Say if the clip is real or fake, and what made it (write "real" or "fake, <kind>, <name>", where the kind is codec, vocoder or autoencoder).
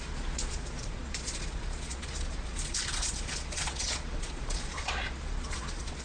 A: fake, vocoder, Vocos